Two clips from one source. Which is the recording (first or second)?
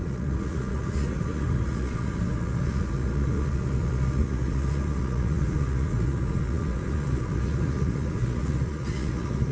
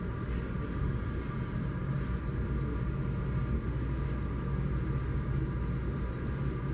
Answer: second